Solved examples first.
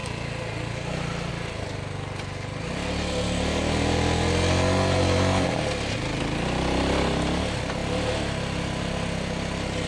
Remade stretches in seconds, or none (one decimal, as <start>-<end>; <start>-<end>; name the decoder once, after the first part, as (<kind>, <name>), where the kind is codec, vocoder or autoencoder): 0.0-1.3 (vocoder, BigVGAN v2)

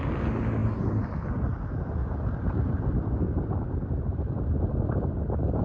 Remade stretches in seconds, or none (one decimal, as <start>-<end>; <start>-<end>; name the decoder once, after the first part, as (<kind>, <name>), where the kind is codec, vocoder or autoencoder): 2.0-5.6 (vocoder, BigVGAN v2)

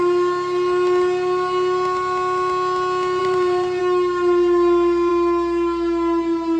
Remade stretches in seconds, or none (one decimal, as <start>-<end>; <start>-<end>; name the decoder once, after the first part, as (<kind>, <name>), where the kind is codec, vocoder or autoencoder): 3.2-3.8 (vocoder, BigVGAN v2)

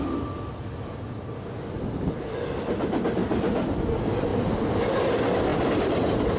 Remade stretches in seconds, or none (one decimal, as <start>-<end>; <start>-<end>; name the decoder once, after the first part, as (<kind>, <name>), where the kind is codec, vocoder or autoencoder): 3.2-3.7 (vocoder, BigVGAN v2); 5.5-6.4

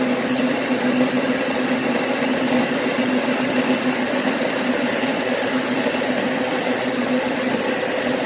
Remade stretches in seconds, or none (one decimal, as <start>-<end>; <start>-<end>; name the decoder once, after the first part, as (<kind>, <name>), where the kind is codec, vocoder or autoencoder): 2.3-3.2 (vocoder, BigVGAN v2)

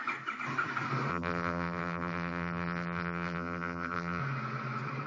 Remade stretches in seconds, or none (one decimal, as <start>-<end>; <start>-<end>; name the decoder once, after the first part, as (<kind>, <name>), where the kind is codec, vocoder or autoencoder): 1.1-4.2 (vocoder, BigVGAN v2)

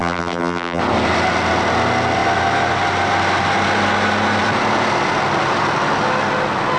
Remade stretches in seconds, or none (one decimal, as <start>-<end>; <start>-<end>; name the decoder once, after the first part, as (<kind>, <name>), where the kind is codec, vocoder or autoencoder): 0.0-0.8 (vocoder, BigVGAN v2)